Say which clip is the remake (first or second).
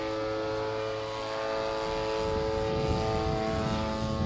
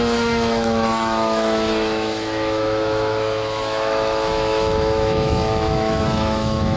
second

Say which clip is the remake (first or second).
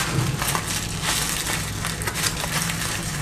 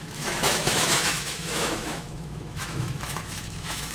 second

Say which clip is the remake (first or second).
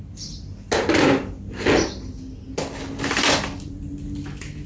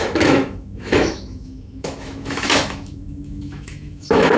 second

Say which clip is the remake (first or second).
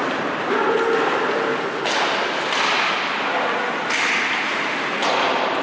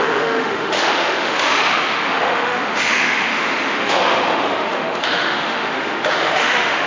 second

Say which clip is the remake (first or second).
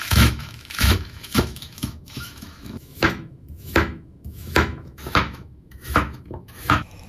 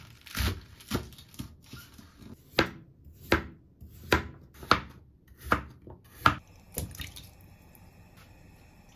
first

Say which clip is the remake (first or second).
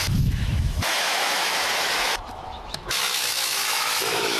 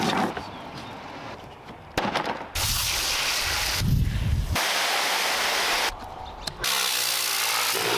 first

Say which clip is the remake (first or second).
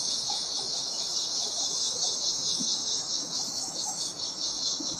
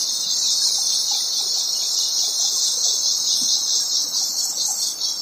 first